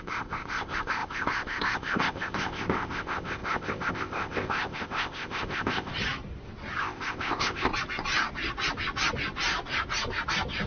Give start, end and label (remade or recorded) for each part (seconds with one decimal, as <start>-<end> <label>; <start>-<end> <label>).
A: 0.0-5.9 remade; 5.9-6.8 recorded; 6.8-7.7 remade; 7.7-10.7 recorded